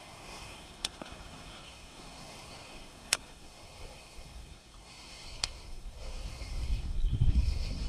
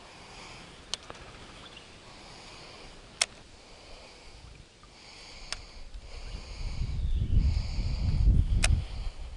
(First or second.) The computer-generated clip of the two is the first